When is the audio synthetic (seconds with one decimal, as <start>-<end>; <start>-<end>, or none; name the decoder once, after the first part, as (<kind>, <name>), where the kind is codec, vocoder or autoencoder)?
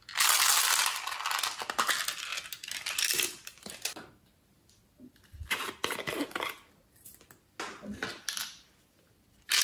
none